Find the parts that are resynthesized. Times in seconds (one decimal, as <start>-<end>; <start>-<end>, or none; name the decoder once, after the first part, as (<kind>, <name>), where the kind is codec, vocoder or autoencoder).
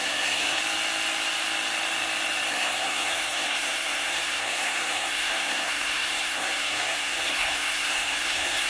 0.0-0.6 (codec, SNAC); 2.5-8.7